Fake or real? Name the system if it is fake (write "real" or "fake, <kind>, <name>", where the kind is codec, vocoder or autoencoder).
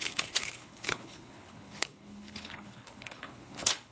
fake, codec, HILCodec